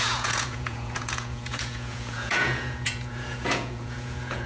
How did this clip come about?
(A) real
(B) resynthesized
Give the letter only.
B